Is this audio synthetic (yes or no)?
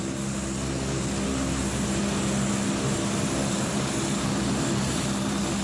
no